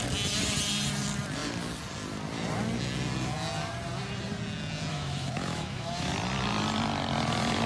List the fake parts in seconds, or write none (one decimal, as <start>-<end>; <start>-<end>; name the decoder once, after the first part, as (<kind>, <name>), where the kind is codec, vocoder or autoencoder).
4.9-6.1 (autoencoder, DAC-VAE)